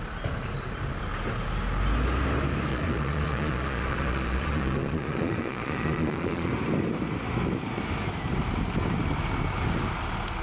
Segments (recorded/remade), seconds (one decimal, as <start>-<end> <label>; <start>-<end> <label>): 0.0-2.7 recorded; 2.7-6.5 remade; 6.5-10.4 recorded